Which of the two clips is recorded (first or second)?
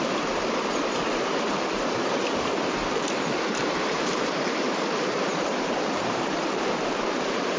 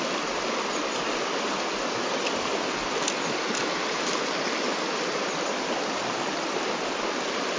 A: second